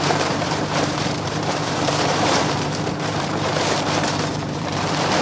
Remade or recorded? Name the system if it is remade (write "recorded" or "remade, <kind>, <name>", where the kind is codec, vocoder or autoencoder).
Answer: remade, vocoder, BigVGAN v2